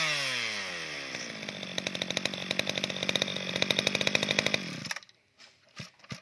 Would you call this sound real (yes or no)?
yes